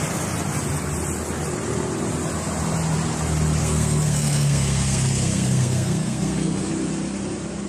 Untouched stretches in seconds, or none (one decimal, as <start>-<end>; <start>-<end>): 0.0-3.6; 6.7-7.7